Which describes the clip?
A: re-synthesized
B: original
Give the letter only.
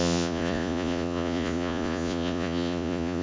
A